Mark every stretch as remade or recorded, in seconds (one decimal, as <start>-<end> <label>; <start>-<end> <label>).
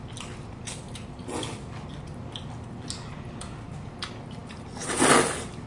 0.0-5.7 recorded